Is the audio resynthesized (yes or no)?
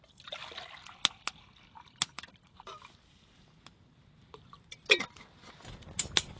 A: no